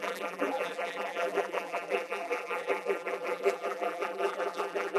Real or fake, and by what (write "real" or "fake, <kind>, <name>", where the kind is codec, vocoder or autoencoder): fake, vocoder, BigVGAN v2